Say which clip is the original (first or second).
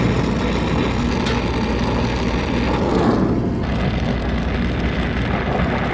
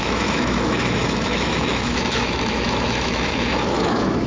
first